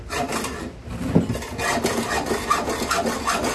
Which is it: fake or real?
real